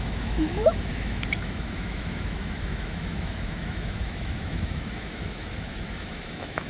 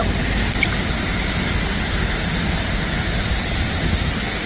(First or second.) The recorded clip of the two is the second